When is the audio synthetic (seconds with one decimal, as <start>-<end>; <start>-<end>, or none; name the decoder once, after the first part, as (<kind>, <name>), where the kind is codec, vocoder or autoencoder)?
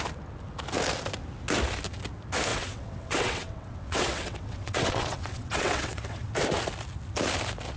2.5-6.3 (vocoder, WaveNeXt)